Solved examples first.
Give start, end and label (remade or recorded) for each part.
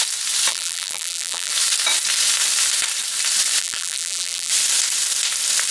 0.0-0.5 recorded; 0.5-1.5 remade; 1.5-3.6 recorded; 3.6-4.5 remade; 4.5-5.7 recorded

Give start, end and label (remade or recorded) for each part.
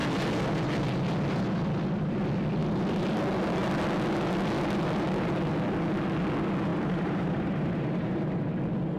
0.0-6.7 recorded; 6.7-8.3 remade; 8.3-9.0 recorded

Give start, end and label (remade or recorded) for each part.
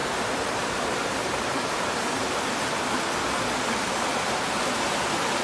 0.0-2.5 remade; 2.5-4.1 recorded; 4.1-5.0 remade; 5.0-5.4 recorded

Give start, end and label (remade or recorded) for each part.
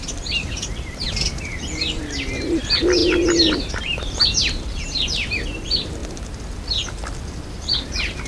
0.0-6.0 remade; 6.0-7.5 recorded; 7.5-8.3 remade